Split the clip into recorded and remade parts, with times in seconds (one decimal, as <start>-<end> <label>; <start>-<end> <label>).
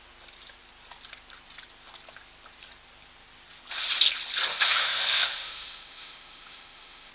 0.0-4.5 recorded; 4.5-7.1 remade